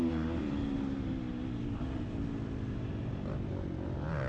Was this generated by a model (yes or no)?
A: no